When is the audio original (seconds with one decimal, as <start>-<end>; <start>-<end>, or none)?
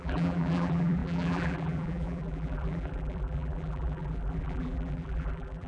none